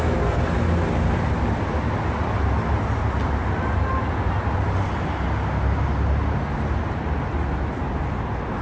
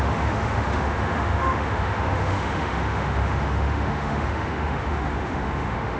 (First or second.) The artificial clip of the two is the second